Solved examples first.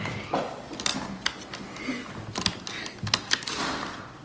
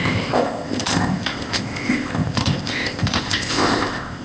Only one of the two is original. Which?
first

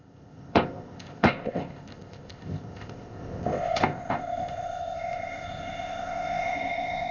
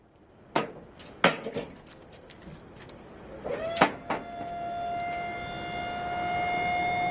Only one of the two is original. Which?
second